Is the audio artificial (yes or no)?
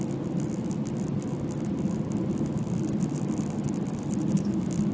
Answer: no